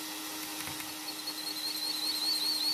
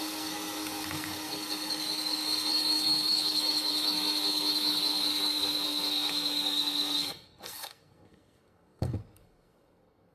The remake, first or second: second